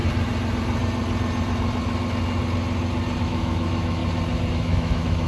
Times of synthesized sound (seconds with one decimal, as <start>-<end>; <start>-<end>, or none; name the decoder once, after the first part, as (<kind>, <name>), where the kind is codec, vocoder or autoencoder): 3.2-4.0 (autoencoder, DAC-VAE); 4.5-5.3